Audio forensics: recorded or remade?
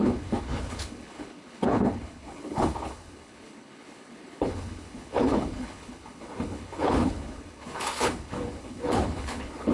remade